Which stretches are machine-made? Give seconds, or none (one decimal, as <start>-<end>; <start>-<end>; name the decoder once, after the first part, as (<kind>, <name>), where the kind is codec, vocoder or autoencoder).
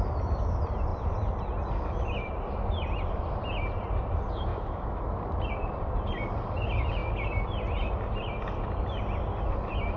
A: 4.5-5.0 (autoencoder, DAC-VAE)